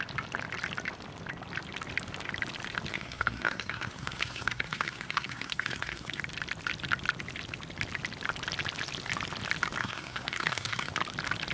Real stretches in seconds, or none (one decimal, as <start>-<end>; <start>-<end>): 0.0-2.9; 6.2-9.8; 10.9-11.5